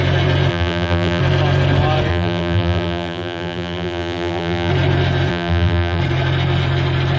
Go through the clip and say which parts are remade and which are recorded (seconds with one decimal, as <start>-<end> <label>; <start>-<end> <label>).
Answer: 0.0-0.5 recorded; 0.5-1.2 remade; 1.2-2.1 recorded; 2.1-4.7 remade; 4.7-5.3 recorded; 5.3-6.0 remade; 6.0-7.2 recorded